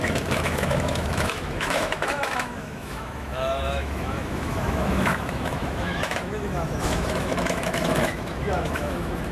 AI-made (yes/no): yes